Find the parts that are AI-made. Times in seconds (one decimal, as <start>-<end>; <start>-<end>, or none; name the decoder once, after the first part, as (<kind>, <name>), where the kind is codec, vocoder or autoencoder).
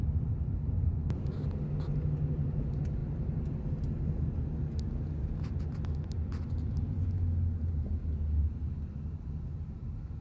none